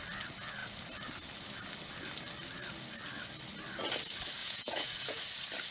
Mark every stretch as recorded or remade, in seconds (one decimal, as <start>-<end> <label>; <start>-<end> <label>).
0.0-4.4 recorded; 4.4-5.2 remade; 5.2-5.7 recorded